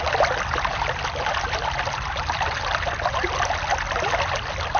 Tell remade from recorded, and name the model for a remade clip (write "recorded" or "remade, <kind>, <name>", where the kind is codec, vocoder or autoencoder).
recorded